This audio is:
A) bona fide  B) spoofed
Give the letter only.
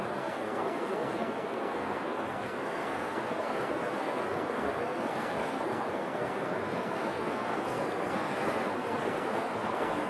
B